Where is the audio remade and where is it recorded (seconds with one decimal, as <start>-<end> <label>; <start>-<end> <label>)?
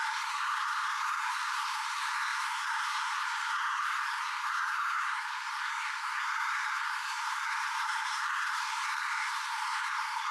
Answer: 0.0-10.3 remade